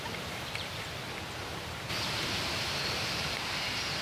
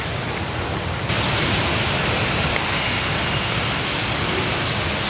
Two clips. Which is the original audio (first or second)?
second